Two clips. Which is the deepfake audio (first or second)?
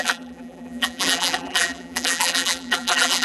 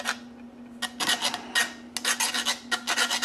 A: first